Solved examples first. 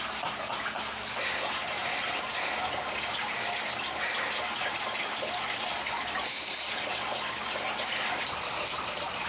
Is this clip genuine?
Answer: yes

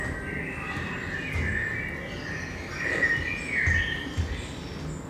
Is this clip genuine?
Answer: yes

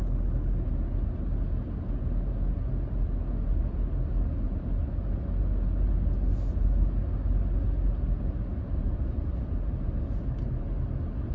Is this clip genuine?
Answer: yes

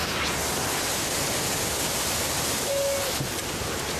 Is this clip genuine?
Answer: yes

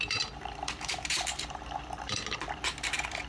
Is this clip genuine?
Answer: no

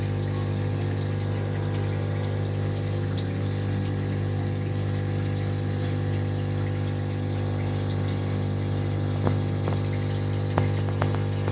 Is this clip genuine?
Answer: yes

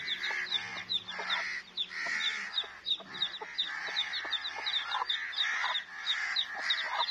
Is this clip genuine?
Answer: yes